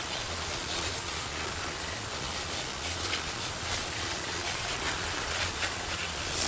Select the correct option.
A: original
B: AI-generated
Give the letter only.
B